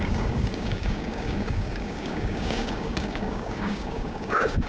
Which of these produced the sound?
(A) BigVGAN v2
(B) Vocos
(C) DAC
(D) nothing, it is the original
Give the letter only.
C